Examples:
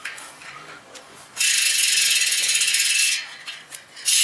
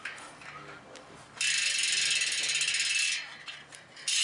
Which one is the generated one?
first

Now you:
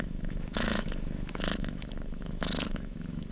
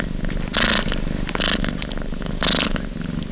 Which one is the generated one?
first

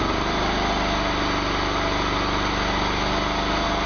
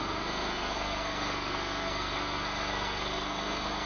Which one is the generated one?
second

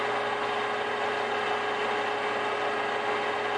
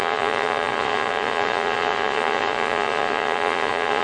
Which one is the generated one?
second